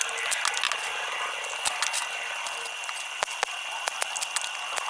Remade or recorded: recorded